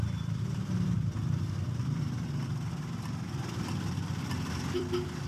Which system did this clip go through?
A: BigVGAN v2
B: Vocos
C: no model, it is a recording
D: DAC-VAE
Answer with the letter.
A